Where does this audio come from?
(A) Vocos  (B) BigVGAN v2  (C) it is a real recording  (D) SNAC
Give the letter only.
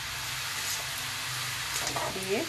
C